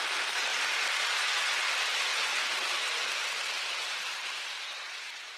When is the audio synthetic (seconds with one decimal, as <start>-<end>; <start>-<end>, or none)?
0.0-5.4